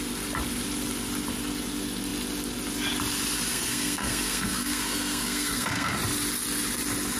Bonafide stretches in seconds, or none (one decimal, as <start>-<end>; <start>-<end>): 0.0-3.5; 5.9-7.2